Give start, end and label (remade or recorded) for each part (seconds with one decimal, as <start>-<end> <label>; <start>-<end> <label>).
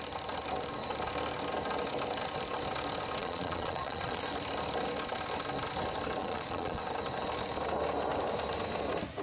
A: 0.0-3.2 recorded; 3.2-4.2 remade; 4.2-6.2 recorded; 6.2-6.8 remade; 6.8-9.2 recorded